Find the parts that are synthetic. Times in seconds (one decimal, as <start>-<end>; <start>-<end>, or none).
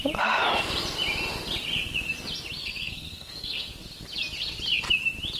2.6-3.7